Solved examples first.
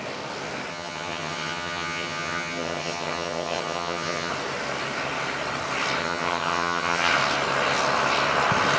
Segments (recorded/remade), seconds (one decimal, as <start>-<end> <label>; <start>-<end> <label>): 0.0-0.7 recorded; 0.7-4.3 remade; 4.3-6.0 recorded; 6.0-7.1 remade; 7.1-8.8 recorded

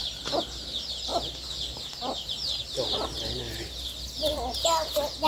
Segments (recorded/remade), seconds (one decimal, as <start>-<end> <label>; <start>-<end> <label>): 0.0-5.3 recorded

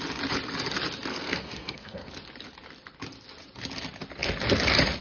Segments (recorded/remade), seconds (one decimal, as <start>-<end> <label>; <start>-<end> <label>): 0.0-1.1 recorded; 1.1-2.1 remade; 2.1-5.0 recorded

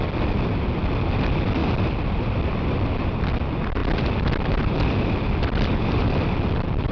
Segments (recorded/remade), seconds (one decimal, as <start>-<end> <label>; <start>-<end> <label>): 0.0-1.6 recorded; 1.6-3.2 remade; 3.2-3.8 recorded; 3.8-6.9 remade

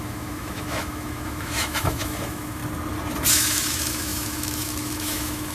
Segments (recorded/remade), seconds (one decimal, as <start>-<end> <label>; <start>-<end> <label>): 0.0-2.6 remade; 2.6-3.3 recorded; 3.3-5.5 remade

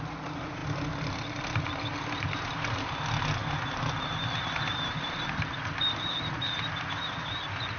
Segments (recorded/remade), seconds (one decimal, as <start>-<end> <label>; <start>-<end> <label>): 0.0-7.8 recorded

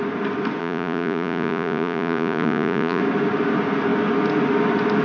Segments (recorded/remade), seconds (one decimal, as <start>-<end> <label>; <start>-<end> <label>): 0.0-0.6 recorded; 0.6-3.0 remade; 3.0-5.0 recorded